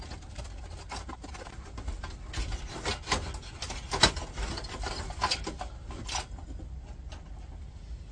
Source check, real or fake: real